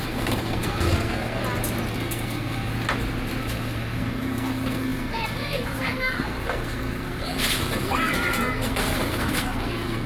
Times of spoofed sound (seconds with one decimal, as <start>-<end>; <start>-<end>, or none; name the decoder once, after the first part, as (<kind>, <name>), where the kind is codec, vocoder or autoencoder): 0.0-1.4 (codec, SNAC); 1.9-2.7; 3.4-10.1